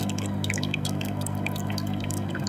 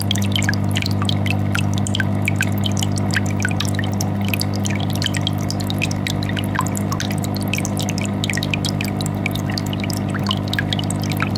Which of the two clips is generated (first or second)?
first